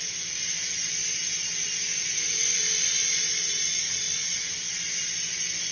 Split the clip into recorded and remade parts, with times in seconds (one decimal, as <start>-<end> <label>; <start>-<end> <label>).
0.0-2.0 recorded; 2.0-2.6 remade; 2.6-3.0 recorded; 3.0-4.5 remade; 4.5-5.7 recorded